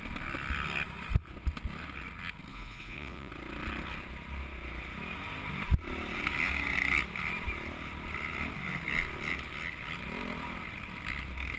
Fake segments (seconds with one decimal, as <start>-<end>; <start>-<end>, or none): 2.5-3.3